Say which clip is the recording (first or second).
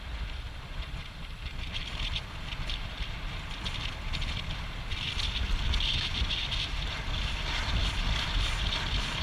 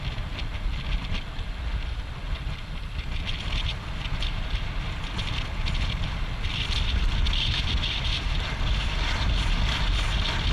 second